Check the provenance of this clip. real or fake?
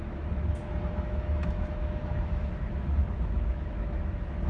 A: fake